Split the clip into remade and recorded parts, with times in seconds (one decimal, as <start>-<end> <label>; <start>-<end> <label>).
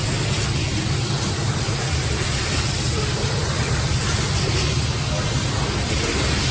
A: 0.0-0.7 recorded; 0.7-4.6 remade; 4.6-6.5 recorded